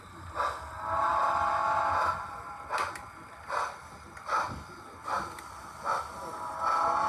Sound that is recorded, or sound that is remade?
recorded